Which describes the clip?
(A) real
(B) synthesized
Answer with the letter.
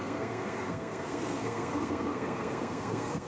B